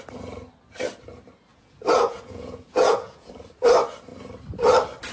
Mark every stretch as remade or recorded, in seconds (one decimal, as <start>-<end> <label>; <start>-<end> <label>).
0.0-1.5 recorded; 1.5-3.3 remade; 3.3-5.1 recorded